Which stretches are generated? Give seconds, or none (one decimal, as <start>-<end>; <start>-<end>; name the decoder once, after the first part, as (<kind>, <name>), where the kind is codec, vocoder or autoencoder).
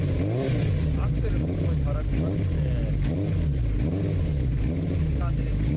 none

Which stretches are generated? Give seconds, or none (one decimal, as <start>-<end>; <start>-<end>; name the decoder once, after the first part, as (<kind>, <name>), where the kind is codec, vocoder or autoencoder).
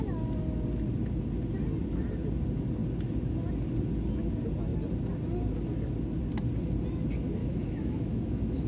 7.4-8.7 (autoencoder, DAC-VAE)